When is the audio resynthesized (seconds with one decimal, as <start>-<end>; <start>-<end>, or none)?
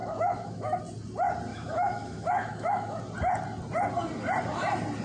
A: 0.0-0.8; 1.5-3.0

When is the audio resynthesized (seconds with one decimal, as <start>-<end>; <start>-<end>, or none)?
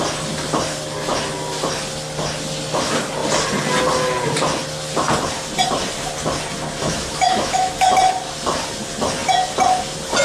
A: 6.8-7.9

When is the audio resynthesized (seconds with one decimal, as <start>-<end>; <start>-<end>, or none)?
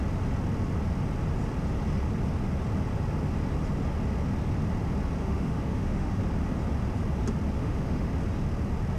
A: 5.2-6.2; 7.6-8.1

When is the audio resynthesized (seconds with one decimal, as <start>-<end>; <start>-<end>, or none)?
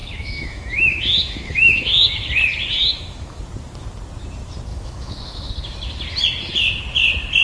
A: 0.0-2.3; 2.8-3.4; 4.7-5.5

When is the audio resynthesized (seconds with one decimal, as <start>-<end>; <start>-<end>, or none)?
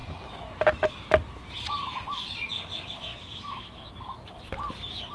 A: 3.1-3.9